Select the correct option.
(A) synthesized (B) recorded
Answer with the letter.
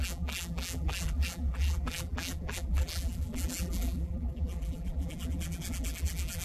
A